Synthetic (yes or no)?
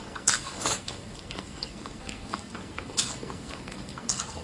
yes